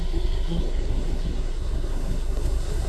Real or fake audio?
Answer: fake